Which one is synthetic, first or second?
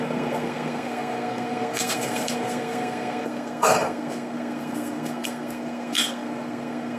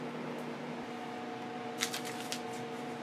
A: first